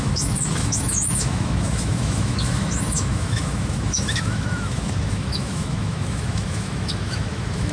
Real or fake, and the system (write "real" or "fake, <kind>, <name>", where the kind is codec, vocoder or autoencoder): fake, autoencoder, DAC-VAE